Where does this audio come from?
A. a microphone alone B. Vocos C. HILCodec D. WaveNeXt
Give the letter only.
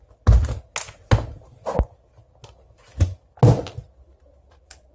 A